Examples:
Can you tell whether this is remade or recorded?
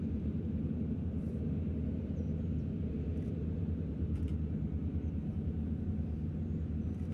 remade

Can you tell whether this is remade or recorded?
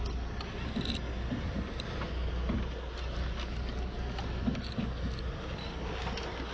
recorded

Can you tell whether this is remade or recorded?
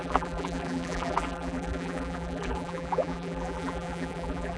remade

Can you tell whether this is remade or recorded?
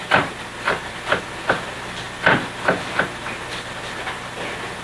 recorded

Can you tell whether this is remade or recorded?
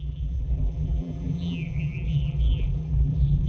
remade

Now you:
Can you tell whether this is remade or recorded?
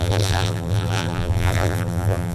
remade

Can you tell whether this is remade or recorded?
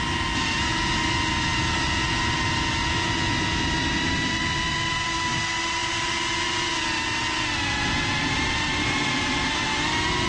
recorded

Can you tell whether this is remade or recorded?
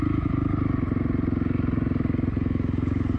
remade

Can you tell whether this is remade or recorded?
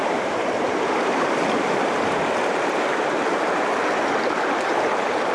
remade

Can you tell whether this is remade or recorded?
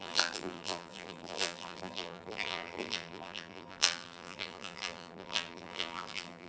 remade